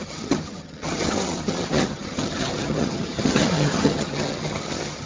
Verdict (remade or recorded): remade